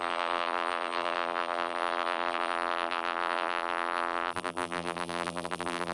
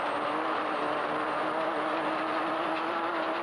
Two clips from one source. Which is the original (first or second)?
second